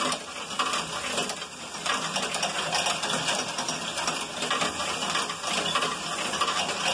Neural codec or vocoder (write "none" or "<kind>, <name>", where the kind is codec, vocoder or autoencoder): none